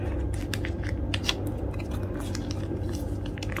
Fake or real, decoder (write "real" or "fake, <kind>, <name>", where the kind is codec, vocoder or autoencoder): real